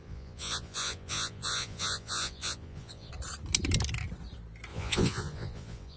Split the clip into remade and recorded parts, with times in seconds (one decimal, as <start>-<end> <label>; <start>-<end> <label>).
0.0-3.1 remade; 3.1-4.7 recorded; 4.7-6.0 remade